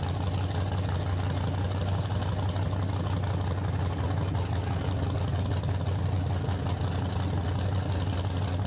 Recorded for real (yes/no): yes